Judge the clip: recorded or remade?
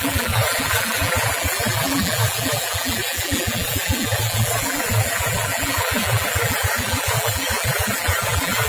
remade